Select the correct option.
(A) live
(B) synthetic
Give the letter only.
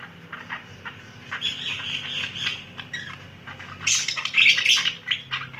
B